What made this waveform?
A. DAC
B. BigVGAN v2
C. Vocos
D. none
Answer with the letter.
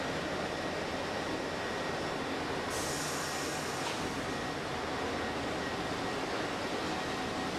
D